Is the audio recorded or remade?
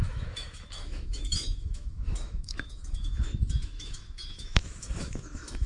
remade